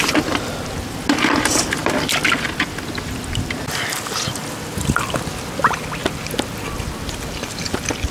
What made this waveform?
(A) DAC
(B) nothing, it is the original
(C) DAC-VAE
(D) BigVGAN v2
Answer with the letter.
B